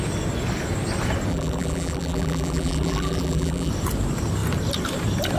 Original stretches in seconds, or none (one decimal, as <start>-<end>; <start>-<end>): 0.0-1.3; 3.7-5.4